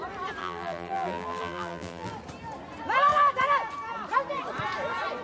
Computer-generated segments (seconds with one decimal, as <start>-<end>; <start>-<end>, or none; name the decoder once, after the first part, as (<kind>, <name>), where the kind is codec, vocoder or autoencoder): 0.4-2.1 (vocoder, BigVGAN v2)